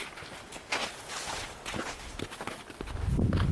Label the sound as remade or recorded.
recorded